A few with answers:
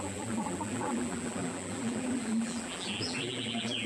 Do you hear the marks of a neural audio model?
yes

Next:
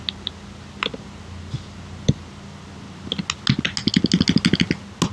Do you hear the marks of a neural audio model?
no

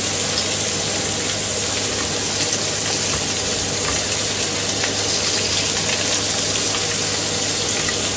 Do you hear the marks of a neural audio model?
no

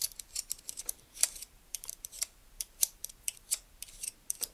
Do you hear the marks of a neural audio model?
yes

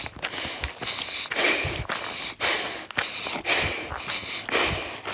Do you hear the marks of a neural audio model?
no